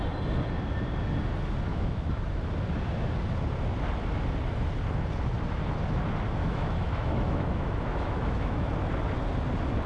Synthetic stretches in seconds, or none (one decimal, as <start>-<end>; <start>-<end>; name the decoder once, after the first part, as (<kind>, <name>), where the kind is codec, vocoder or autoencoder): 1.7-2.4 (autoencoder, DAC-VAE); 6.4-8.7